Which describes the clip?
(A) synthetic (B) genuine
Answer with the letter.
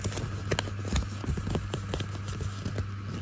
B